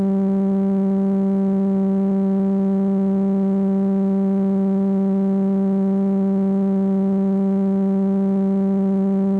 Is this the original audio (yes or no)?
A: yes